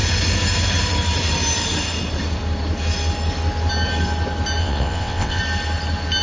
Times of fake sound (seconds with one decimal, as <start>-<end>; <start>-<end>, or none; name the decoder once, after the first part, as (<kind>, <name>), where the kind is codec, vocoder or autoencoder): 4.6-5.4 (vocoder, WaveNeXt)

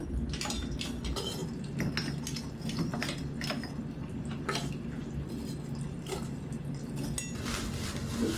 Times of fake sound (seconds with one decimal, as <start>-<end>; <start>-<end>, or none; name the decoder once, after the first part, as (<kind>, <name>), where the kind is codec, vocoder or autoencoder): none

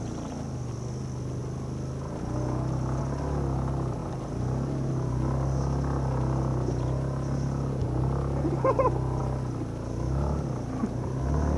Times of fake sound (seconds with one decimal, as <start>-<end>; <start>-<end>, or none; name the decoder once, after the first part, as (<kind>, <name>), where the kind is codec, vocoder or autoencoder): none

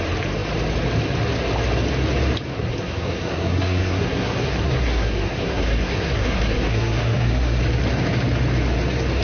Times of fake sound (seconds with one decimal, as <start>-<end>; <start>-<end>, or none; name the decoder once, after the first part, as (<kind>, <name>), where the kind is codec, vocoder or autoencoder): 2.5-7.6 (codec, SNAC)

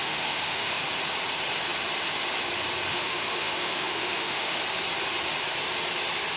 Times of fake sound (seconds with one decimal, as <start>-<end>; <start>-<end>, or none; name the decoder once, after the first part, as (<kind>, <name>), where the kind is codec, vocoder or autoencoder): 0.0-0.8 (autoencoder, DAC-VAE); 2.9-4.6